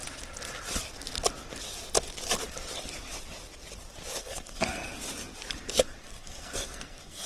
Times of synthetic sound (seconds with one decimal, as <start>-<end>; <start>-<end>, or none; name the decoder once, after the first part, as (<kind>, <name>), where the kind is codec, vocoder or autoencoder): 4.2-4.9 (codec, SNAC); 6.0-7.3